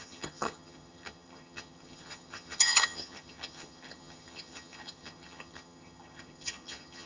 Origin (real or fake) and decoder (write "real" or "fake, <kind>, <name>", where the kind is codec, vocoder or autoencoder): fake, vocoder, HiFi-GAN